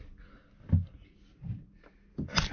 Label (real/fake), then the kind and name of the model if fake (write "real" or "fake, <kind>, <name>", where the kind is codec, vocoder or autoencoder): real